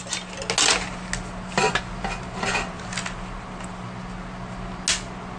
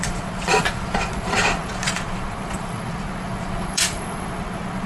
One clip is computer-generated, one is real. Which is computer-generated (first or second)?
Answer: second